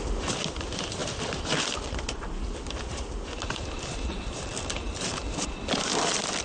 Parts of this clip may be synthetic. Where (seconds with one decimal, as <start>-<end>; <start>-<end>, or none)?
none